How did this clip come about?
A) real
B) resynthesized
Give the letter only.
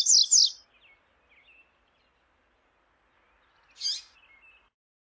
A